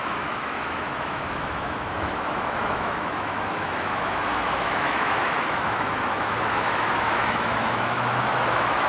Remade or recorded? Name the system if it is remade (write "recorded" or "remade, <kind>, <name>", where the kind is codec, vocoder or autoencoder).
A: remade, autoencoder, DAC-VAE